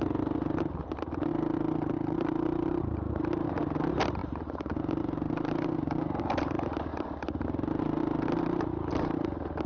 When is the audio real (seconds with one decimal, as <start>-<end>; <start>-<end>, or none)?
0.0-4.2; 6.2-9.7